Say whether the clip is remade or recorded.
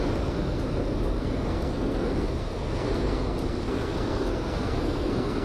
remade